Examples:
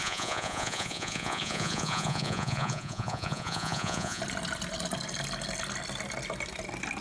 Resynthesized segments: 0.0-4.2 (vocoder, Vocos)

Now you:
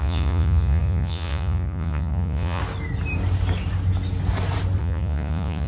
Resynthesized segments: 0.0-2.6 (vocoder, Vocos); 4.8-5.7

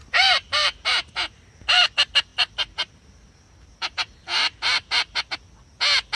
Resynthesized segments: 0.0-1.5 (vocoder, BigVGAN v2); 2.3-5.3

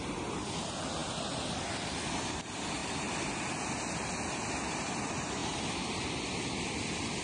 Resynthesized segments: none